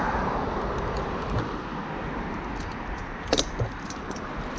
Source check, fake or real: real